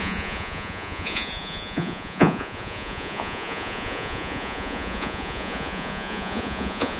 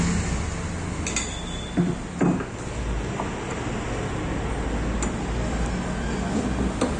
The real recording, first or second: second